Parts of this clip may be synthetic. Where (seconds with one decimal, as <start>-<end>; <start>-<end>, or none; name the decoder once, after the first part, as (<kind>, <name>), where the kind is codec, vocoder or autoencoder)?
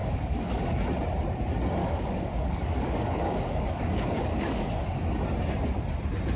0.0-0.8 (codec, DAC); 1.8-5.0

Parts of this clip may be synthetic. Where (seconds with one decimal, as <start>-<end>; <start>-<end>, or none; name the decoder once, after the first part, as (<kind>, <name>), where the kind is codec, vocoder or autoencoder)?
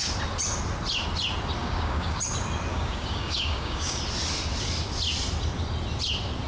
1.6-2.2 (codec, DAC); 2.7-4.0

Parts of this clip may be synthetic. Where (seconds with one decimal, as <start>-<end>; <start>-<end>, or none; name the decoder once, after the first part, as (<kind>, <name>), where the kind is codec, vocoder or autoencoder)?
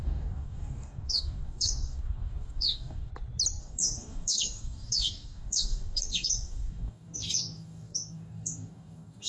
0.0-3.1 (codec, DAC); 3.6-9.3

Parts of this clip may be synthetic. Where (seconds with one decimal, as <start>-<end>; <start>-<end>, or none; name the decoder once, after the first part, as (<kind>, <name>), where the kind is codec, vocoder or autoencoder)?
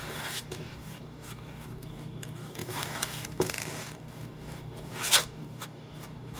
0.0-6.4 (codec, DAC)